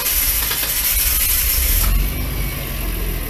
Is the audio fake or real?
real